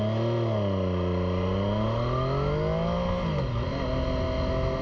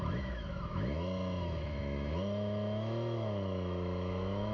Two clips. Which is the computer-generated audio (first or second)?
second